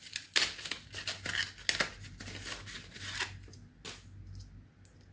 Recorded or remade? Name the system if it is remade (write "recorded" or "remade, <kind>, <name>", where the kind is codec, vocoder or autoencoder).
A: recorded